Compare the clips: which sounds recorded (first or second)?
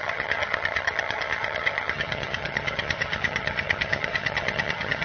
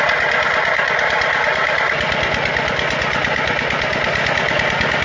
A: second